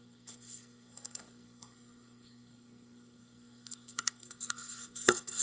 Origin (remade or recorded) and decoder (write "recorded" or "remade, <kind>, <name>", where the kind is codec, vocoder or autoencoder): remade, codec, SNAC